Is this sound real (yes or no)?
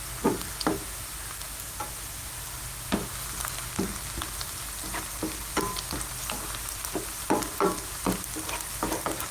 yes